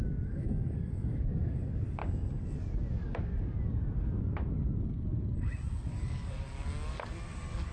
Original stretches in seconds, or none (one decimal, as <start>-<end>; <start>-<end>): 2.0-2.9; 3.3-5.8